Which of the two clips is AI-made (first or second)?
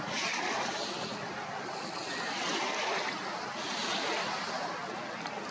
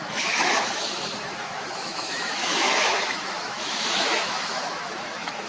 second